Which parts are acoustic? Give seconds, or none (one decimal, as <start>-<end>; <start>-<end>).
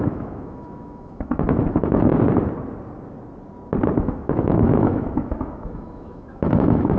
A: 2.1-4.0